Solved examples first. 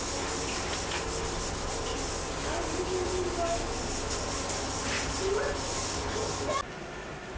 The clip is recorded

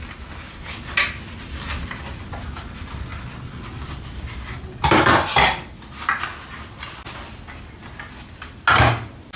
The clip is recorded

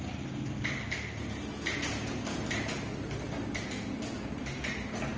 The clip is recorded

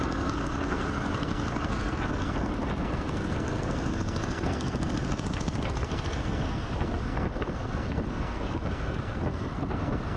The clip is remade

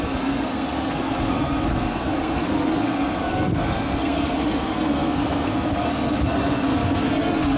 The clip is remade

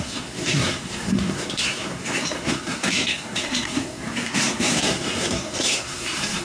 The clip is remade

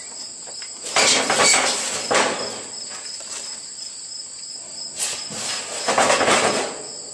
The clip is recorded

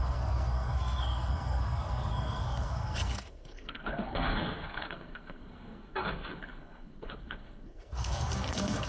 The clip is remade